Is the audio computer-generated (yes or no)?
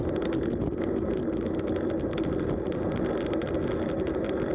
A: no